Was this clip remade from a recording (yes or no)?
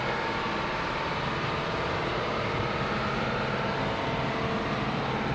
no